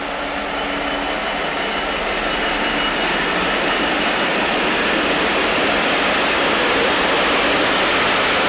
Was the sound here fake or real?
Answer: real